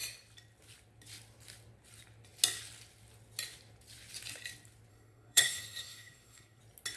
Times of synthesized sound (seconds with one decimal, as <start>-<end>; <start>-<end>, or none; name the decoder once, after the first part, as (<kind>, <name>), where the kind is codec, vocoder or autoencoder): 4.9-6.6 (codec, SNAC)